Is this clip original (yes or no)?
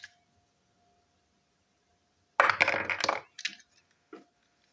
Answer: yes